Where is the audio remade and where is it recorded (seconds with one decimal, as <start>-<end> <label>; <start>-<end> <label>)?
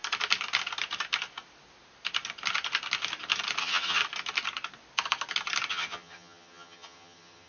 0.0-3.6 recorded; 3.6-4.0 remade; 4.0-5.7 recorded; 5.7-7.5 remade